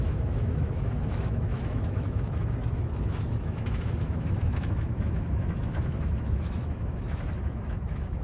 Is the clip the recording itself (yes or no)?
no